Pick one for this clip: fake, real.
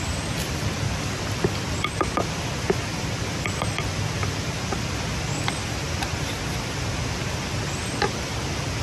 real